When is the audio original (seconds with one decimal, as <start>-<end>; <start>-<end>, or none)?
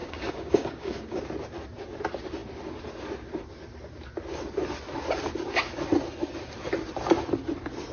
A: 1.2-7.9